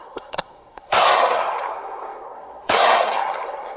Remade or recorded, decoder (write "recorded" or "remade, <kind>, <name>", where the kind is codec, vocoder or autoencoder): remade, codec, SNAC